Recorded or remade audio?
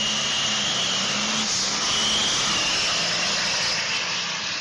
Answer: recorded